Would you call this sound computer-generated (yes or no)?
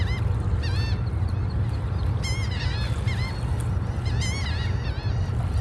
no